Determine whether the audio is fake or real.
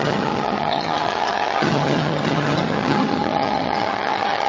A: fake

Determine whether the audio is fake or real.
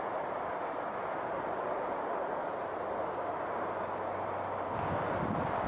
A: real